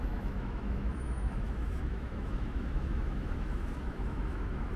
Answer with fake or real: fake